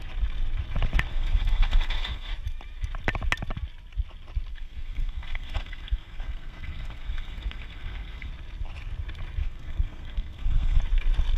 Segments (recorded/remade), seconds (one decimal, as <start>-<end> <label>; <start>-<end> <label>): 0.0-1.1 recorded; 1.1-2.3 remade; 2.3-4.5 recorded; 4.5-8.3 remade; 8.3-9.4 recorded; 9.4-10.8 remade; 10.8-11.4 recorded

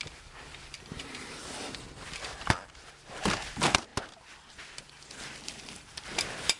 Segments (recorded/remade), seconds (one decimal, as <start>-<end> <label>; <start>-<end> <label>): 0.0-1.4 remade; 1.4-2.2 recorded; 2.2-3.9 remade; 3.9-5.5 recorded; 5.5-6.6 remade

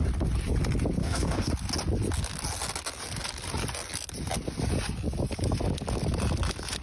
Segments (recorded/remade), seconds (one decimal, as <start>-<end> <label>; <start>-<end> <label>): 0.0-1.0 recorded; 1.0-1.5 remade; 1.5-6.8 recorded

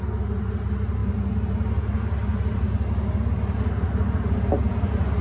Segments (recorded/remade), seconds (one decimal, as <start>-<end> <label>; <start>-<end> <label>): 0.0-5.2 recorded